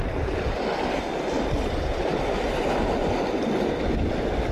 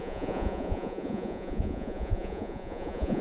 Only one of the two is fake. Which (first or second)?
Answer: second